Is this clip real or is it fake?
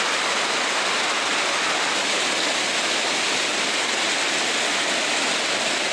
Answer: real